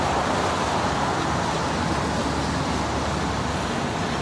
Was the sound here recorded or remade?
recorded